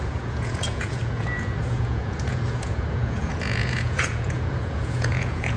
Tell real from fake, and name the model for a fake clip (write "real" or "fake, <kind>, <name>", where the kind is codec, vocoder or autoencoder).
fake, vocoder, Vocos